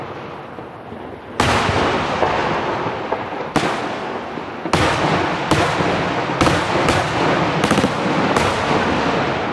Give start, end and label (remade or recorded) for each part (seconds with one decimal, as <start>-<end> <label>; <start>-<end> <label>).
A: 0.0-9.5 recorded